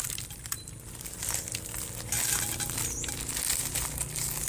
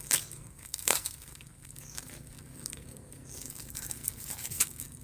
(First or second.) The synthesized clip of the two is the second